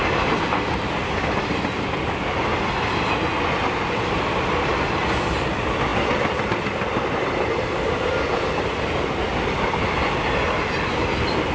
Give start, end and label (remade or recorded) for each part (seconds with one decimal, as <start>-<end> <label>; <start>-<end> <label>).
0.0-11.5 recorded